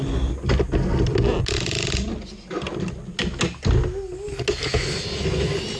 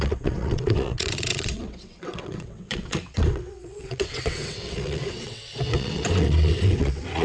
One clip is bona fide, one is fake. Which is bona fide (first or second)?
first